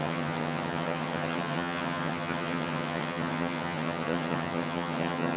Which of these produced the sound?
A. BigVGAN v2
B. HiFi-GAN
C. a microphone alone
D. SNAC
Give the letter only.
B